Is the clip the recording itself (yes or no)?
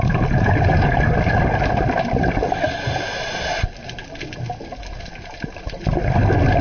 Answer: yes